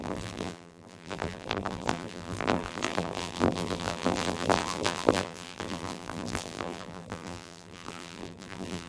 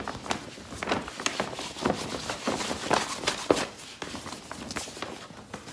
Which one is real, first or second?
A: second